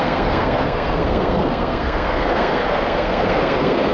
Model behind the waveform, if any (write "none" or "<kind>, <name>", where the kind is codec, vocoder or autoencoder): codec, SNAC